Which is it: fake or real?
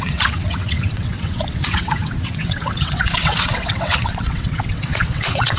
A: fake